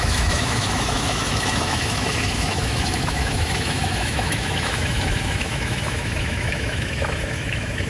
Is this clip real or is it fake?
fake